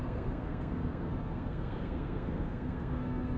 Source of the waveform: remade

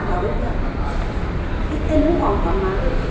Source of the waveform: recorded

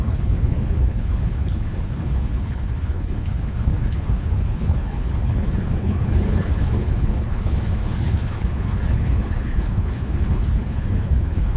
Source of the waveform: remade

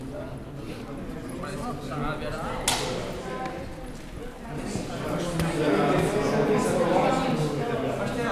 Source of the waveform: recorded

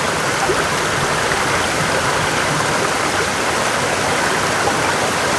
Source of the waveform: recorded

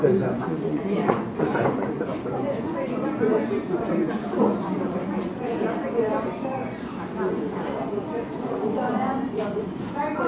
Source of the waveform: remade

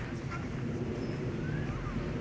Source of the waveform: recorded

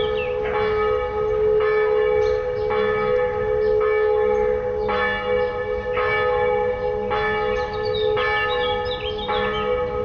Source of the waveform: recorded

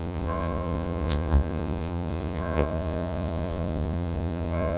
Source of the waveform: remade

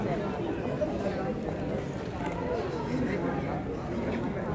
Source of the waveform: recorded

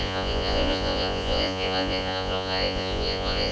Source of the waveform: remade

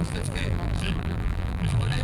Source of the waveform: remade